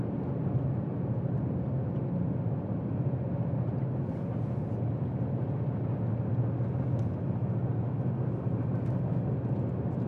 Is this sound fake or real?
real